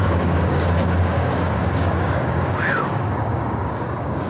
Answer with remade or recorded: remade